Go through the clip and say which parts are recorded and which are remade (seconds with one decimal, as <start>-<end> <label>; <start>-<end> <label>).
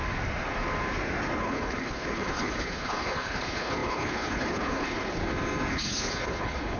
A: 0.0-1.4 recorded; 1.4-5.2 remade; 5.2-5.7 recorded; 5.7-6.8 remade